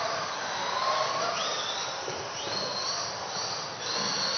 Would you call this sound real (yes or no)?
yes